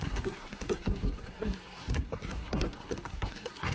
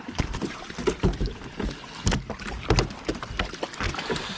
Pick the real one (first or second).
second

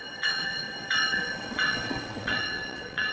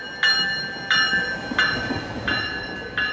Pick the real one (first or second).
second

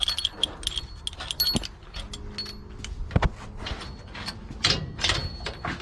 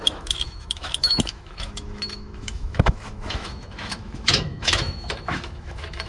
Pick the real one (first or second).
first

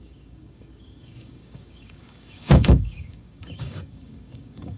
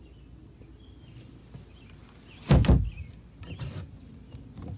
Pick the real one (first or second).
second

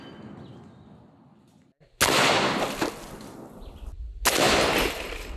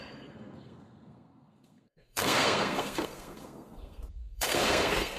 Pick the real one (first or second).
first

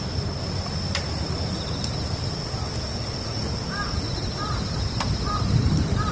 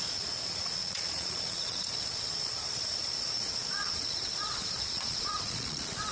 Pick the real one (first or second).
first